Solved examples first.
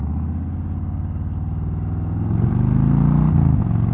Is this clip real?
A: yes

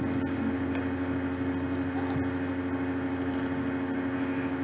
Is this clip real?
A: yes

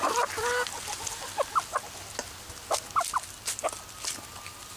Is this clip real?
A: yes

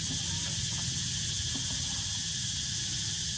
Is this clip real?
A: yes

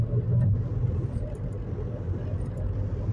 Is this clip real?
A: yes